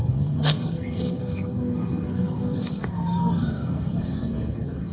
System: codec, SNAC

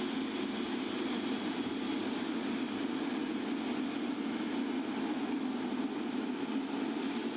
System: none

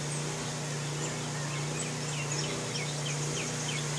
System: none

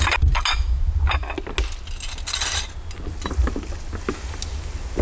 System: none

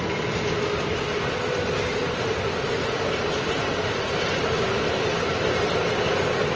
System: none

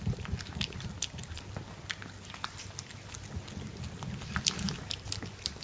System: none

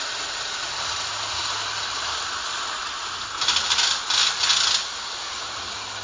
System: none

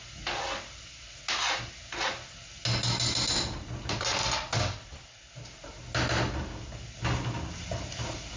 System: none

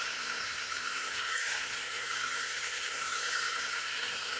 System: codec, SNAC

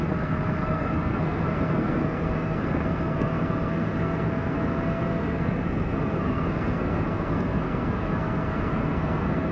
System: codec, SNAC